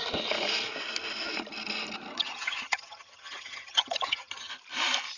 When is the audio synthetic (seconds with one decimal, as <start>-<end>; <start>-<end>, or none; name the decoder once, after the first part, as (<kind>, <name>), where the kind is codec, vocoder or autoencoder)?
2.1-4.5 (vocoder, HiFi-GAN)